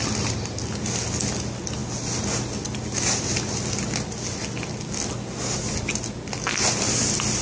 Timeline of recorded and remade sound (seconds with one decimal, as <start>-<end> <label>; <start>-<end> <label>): 0.0-7.4 recorded

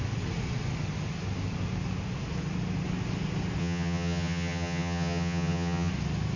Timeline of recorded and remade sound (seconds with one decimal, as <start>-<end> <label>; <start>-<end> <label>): 0.0-3.6 recorded; 3.6-5.9 remade; 5.9-6.4 recorded

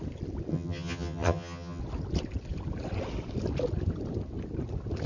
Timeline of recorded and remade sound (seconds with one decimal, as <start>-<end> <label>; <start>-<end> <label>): 0.0-0.5 recorded; 0.5-1.8 remade; 1.8-5.1 recorded

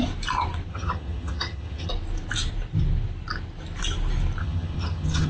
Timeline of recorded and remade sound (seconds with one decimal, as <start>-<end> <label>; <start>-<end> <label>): 0.0-0.7 recorded; 0.7-1.9 remade; 1.9-4.4 recorded; 4.4-5.3 remade

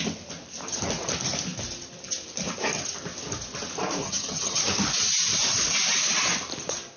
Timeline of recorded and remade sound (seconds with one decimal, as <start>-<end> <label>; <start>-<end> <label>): 0.0-4.0 recorded; 4.0-4.6 remade; 4.6-7.0 recorded

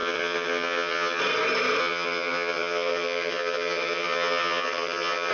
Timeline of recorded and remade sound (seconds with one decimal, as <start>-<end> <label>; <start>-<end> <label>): 0.0-1.2 remade; 1.2-1.8 recorded; 1.8-5.3 remade

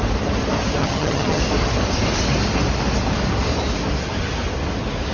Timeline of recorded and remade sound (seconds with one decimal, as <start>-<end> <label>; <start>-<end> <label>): 0.0-0.8 recorded; 0.8-1.4 remade; 1.4-5.1 recorded